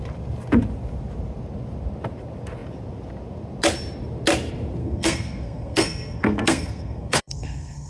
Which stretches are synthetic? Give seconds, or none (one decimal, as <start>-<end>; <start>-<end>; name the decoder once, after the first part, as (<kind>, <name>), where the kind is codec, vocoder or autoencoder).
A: 4.8-7.9 (codec, SNAC)